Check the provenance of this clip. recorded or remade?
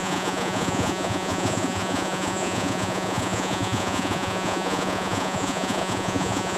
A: remade